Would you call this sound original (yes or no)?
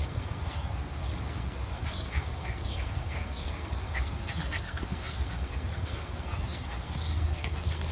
no